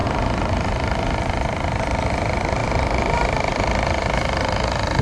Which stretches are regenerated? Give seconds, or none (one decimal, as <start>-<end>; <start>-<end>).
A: 0.0-5.0